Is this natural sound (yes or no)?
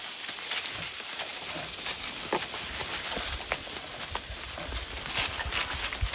yes